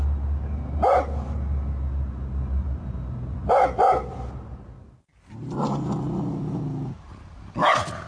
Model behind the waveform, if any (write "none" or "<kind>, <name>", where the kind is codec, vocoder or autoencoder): none